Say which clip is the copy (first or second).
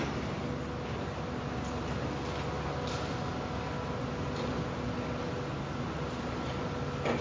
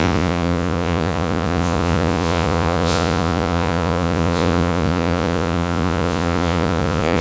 second